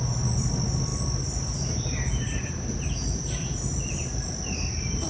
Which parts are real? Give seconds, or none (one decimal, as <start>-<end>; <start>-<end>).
0.0-5.1